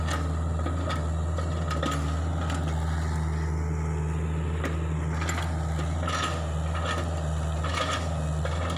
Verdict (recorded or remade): recorded